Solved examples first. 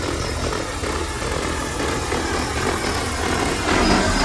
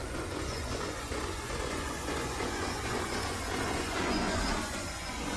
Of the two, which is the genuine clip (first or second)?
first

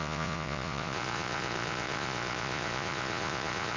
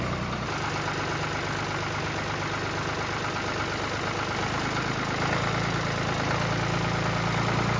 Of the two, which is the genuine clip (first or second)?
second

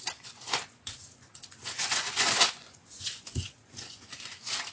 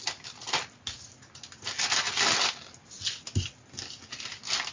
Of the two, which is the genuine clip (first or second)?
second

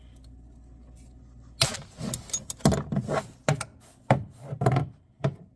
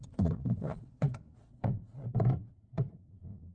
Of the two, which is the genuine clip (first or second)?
first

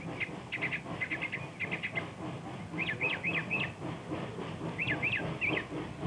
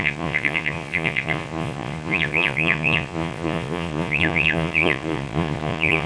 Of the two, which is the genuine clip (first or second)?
first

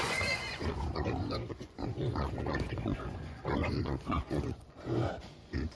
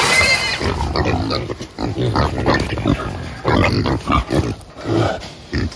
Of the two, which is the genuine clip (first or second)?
second